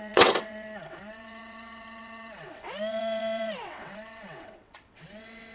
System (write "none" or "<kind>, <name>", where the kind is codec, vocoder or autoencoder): vocoder, WaveNeXt